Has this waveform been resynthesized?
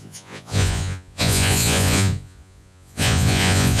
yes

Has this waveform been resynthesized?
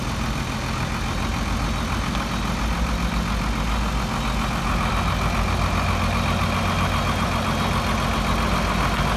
no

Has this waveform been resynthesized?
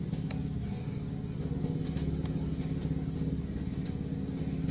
no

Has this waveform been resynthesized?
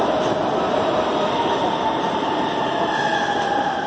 no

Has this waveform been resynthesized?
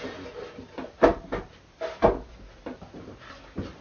no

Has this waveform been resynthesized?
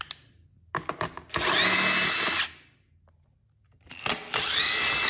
no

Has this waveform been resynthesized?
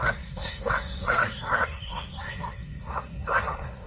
yes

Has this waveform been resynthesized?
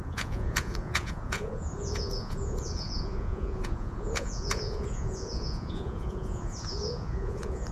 yes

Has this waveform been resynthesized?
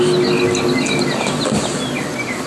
no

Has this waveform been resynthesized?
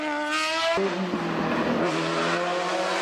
no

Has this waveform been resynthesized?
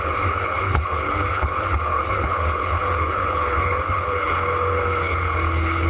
yes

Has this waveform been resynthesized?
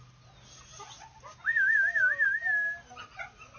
no